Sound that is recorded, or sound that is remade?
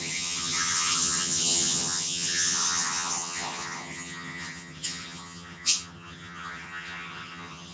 remade